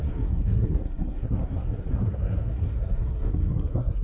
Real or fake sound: fake